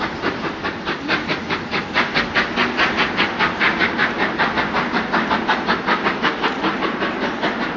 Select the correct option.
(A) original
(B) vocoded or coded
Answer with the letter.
A